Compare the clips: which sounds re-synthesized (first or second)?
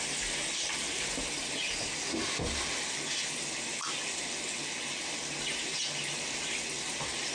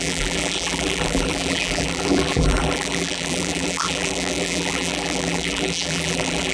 second